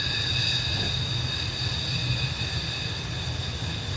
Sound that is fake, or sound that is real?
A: real